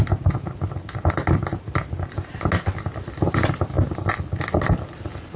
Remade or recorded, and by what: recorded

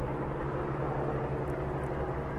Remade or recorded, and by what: recorded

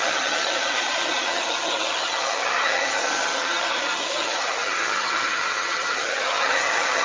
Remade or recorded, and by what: remade, vocoder, HiFi-GAN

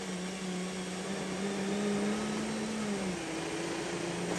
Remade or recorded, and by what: recorded